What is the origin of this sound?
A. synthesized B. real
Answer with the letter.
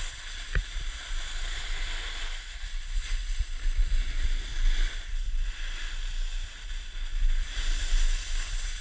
B